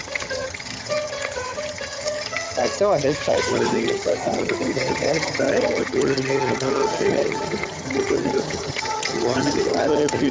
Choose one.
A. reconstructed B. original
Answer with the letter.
A